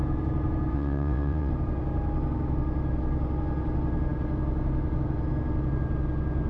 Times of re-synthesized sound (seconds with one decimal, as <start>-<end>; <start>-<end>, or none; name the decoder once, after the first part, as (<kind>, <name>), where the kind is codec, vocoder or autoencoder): 0.7-1.5 (vocoder, WaveNeXt)